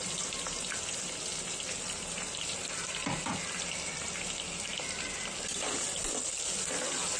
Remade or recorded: recorded